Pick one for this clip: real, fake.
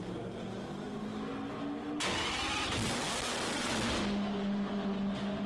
real